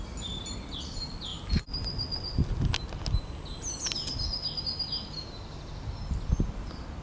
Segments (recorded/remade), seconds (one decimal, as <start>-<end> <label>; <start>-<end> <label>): 0.0-7.0 recorded